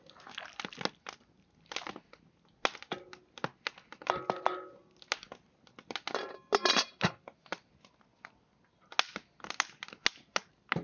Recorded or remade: recorded